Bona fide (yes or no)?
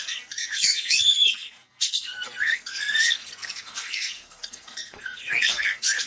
no